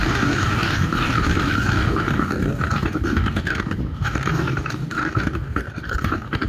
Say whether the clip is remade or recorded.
remade